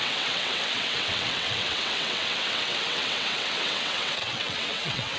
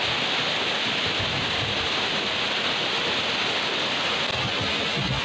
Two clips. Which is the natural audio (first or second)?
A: second